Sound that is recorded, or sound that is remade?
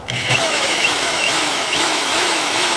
remade